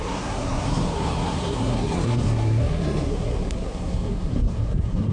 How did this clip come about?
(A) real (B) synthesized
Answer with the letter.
B